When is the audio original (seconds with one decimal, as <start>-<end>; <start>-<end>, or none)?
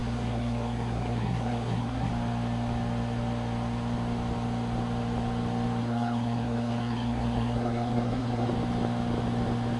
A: 2.1-5.8; 8.5-9.8